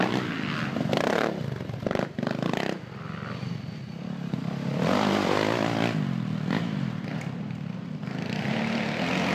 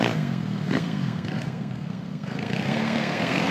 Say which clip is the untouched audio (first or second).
first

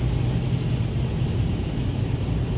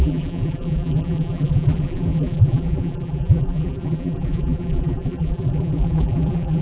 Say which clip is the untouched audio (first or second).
first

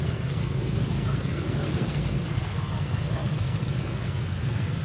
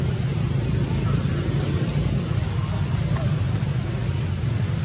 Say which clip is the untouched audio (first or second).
second